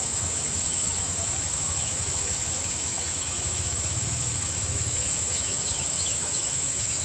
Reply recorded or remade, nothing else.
remade